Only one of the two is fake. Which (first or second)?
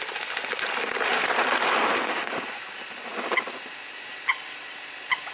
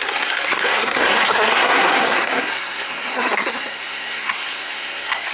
second